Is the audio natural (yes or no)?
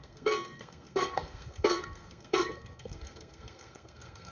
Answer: no